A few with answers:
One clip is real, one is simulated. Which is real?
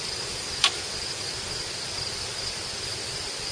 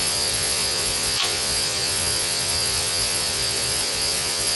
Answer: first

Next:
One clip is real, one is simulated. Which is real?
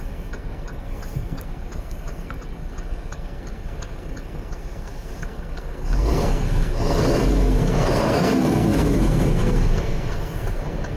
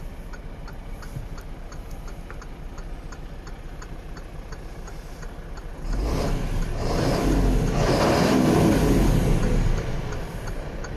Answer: second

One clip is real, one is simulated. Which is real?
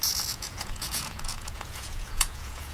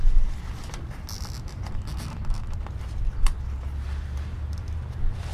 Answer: second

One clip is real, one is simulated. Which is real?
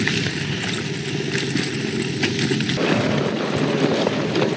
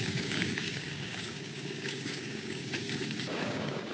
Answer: first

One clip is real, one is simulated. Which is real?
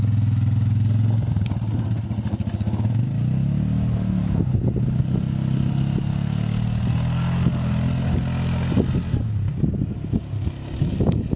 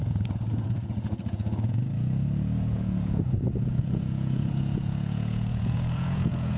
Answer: first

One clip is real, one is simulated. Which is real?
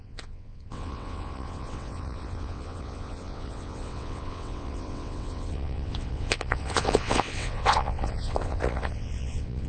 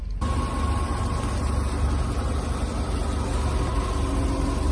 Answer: second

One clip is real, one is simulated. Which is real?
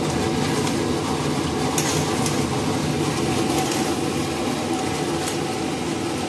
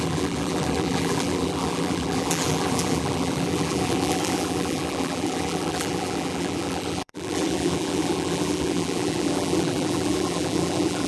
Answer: first